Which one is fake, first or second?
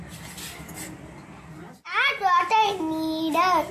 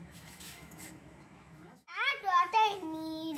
second